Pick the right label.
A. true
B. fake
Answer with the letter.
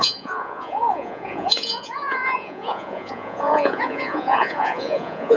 B